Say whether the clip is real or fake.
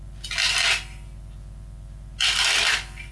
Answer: real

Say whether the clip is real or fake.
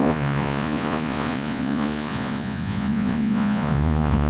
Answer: fake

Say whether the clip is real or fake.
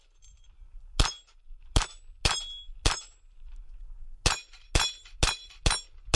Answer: real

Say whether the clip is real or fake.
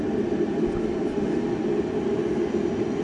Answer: real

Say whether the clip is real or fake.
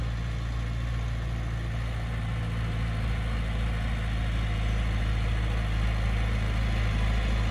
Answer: real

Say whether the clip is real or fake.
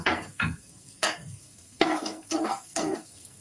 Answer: fake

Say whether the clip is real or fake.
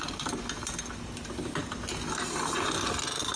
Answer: real